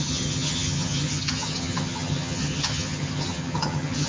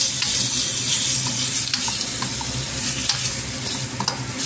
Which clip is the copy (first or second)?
first